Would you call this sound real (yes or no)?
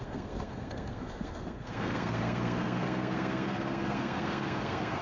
no